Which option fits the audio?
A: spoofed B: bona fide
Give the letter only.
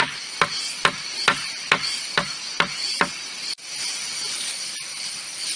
B